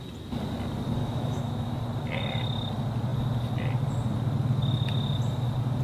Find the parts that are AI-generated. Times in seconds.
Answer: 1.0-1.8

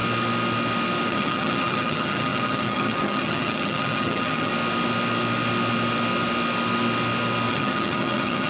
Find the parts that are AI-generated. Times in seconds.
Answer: 1.1-4.5; 7.5-8.5

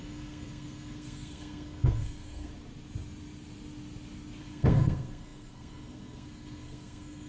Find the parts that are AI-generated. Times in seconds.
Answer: 0.0-2.5; 4.4-7.3

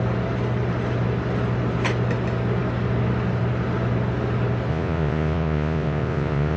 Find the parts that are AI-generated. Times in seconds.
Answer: 4.7-6.6

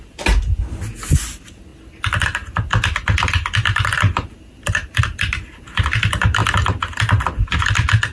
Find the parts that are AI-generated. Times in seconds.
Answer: none

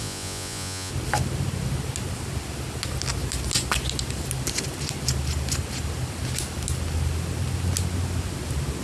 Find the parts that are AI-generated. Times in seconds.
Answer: 0.0-0.9

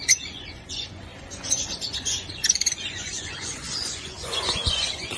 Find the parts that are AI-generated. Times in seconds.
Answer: 0.0-5.2